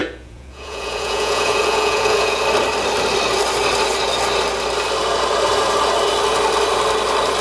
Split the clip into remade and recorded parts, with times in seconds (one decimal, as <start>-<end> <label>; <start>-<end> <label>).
0.0-2.4 remade; 2.4-7.4 recorded